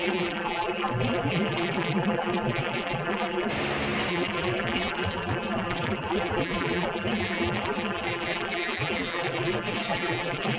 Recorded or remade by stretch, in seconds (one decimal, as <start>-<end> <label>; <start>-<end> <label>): 0.0-3.5 remade; 3.5-4.1 recorded; 4.1-10.6 remade